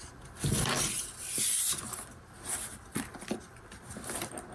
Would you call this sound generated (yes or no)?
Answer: yes